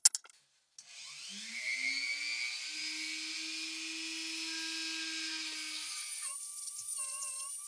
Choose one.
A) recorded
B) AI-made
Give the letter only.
A